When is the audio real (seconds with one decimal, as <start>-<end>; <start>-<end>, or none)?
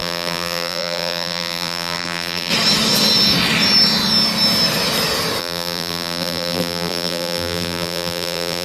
2.5-5.4